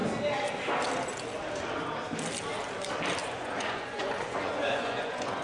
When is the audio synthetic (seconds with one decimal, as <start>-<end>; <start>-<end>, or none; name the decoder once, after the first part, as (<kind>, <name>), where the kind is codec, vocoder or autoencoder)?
3.2-5.4 (vocoder, Vocos)